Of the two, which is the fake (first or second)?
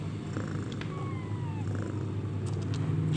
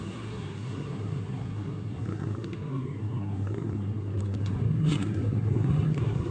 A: second